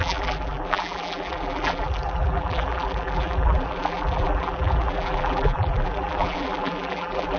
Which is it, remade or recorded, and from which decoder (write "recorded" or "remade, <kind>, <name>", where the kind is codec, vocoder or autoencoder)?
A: remade, vocoder, BigVGAN v2